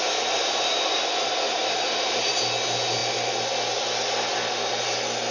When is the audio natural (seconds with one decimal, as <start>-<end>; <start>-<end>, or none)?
0.0-0.4; 2.4-5.3